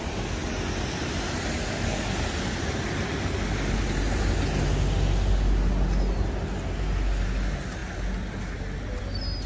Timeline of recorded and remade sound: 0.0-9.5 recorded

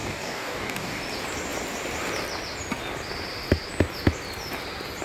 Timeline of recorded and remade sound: 0.0-1.0 remade; 1.0-5.0 recorded